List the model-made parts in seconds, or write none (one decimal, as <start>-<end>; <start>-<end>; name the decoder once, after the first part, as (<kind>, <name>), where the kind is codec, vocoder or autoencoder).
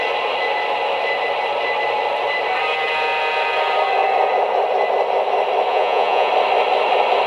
5.7-6.3 (vocoder, Vocos)